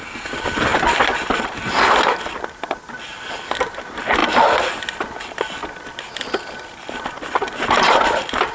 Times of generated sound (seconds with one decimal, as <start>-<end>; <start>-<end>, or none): none